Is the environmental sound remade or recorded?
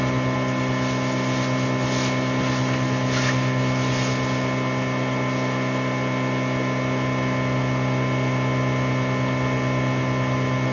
recorded